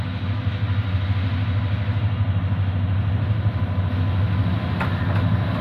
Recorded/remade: recorded